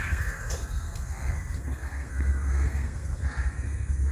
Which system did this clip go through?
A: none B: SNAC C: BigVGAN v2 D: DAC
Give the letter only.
B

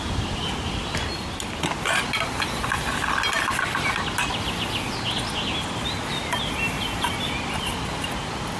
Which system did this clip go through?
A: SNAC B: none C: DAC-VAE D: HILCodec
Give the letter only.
B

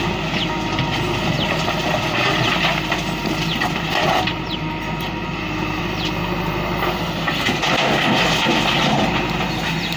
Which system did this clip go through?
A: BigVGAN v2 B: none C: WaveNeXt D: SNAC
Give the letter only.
B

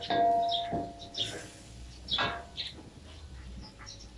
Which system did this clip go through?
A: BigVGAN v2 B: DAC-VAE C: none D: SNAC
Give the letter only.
C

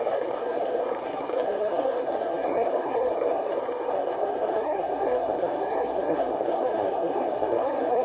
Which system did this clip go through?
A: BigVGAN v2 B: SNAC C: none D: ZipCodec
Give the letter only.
B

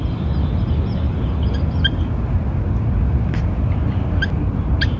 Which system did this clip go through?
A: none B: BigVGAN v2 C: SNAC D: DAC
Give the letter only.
A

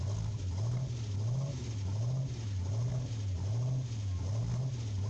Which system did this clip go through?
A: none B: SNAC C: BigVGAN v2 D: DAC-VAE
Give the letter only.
A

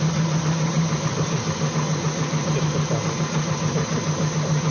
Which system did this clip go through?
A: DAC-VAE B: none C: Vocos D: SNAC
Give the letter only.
B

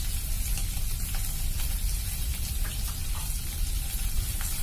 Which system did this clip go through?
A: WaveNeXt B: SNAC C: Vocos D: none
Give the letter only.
D